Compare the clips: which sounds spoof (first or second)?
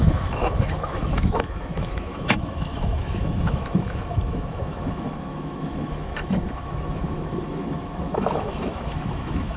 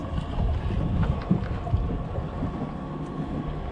first